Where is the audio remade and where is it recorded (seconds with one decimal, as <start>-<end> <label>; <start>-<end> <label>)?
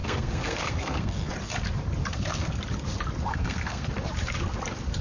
0.0-1.3 remade; 1.3-2.0 recorded; 2.0-2.6 remade; 2.6-3.3 recorded; 3.3-3.9 remade; 3.9-5.0 recorded